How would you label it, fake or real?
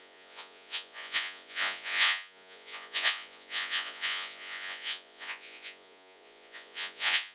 fake